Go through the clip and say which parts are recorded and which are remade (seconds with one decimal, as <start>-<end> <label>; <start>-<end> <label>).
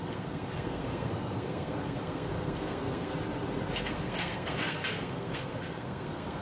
0.0-3.1 remade; 3.1-3.8 recorded; 3.8-6.4 remade